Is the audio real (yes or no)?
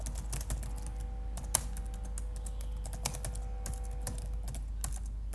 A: yes